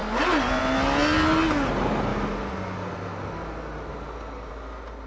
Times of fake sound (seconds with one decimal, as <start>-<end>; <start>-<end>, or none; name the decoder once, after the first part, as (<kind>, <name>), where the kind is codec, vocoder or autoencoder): none